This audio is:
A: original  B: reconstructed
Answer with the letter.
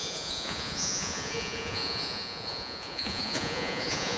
B